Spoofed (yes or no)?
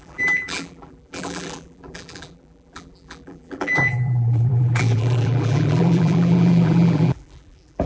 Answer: yes